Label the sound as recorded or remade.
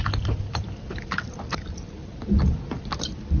recorded